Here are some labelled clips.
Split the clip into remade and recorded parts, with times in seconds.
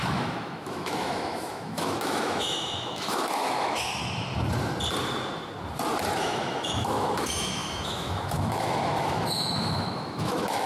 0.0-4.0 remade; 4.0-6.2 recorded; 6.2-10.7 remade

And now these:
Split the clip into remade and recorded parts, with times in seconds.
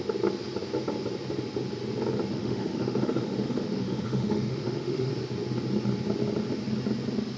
0.0-2.4 recorded; 2.4-5.1 remade; 5.1-7.4 recorded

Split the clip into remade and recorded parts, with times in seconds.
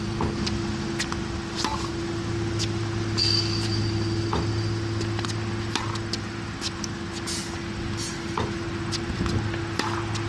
0.0-10.3 recorded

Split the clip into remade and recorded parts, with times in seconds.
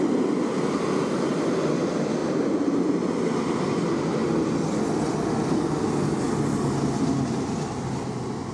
0.0-8.5 recorded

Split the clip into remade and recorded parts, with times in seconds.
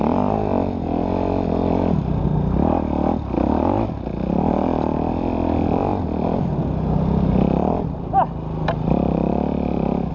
0.0-10.1 recorded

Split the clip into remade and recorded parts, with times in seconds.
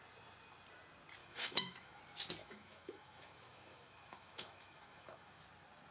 0.0-1.2 recorded; 1.2-2.0 remade; 2.0-2.4 recorded; 2.4-5.4 remade; 5.4-5.9 recorded